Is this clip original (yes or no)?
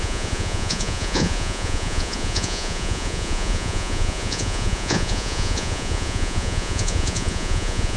no